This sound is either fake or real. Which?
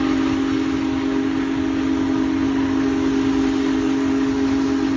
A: real